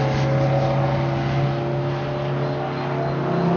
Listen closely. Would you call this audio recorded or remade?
recorded